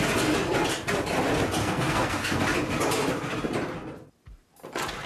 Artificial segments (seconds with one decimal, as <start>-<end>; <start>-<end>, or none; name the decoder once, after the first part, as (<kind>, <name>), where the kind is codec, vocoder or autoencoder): 1.6-2.4 (codec, SNAC)